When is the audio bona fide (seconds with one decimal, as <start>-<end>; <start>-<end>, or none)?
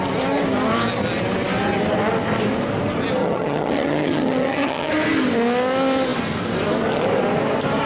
0.0-3.2; 4.9-7.9